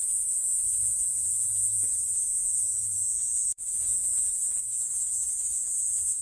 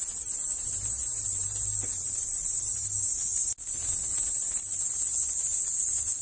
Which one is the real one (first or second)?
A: second